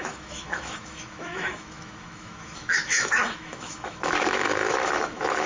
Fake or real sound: fake